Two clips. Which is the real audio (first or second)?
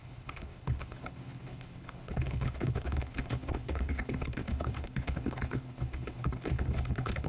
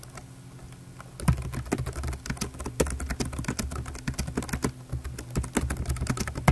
second